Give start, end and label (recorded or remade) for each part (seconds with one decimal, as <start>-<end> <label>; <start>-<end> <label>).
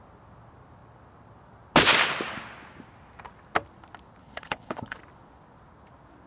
0.0-4.2 recorded; 4.2-5.0 remade; 5.0-6.3 recorded